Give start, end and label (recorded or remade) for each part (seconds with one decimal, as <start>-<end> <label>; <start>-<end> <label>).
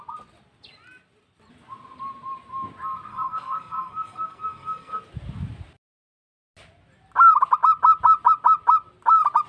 0.0-3.1 recorded; 3.1-5.0 remade; 5.0-9.5 recorded